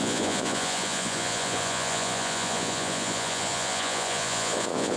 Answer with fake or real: fake